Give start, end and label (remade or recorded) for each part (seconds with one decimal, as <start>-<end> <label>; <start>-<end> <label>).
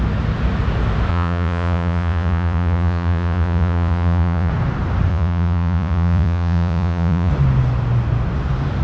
0.0-1.1 recorded; 1.1-4.5 remade; 4.5-5.1 recorded; 5.1-7.3 remade; 7.3-8.8 recorded